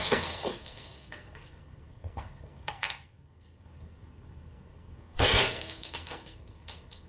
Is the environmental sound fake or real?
fake